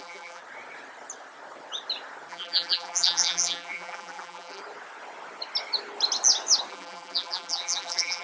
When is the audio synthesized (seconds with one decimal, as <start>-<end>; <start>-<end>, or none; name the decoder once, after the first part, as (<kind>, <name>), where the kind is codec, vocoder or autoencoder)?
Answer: 0.0-0.4 (vocoder, BigVGAN v2); 2.3-4.6; 6.7-8.2